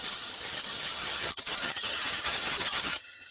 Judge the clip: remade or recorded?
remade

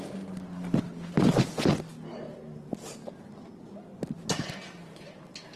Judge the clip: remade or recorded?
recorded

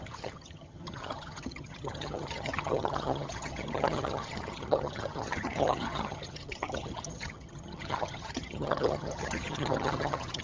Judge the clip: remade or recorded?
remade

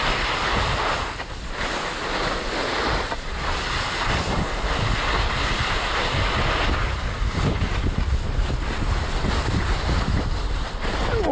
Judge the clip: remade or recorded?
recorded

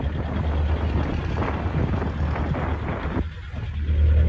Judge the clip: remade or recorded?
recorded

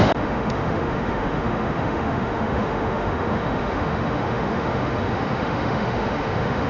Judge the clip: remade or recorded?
remade